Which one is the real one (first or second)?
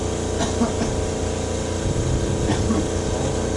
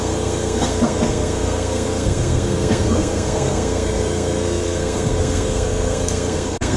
first